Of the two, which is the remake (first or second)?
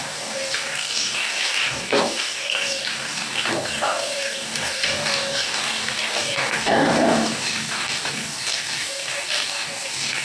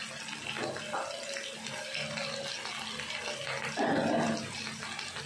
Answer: first